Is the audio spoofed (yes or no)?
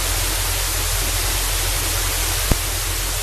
no